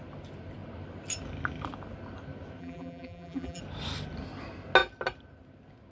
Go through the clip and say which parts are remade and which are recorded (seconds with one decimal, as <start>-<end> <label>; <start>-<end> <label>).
0.0-2.6 recorded; 2.6-3.6 remade; 3.6-5.9 recorded

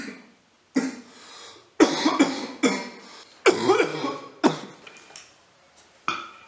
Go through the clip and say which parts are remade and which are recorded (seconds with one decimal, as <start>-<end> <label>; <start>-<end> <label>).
0.0-3.9 recorded; 3.9-4.4 remade; 4.4-6.5 recorded

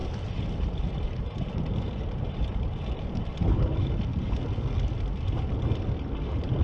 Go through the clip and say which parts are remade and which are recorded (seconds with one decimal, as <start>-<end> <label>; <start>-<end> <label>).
0.0-4.0 remade; 4.0-6.6 recorded

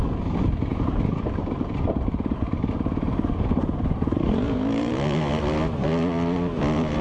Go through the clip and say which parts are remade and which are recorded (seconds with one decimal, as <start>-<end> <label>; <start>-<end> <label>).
0.0-0.7 recorded; 0.7-4.9 remade; 4.9-7.0 recorded